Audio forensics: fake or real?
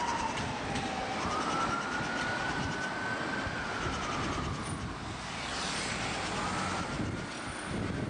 real